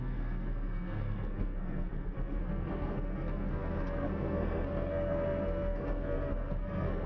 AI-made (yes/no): yes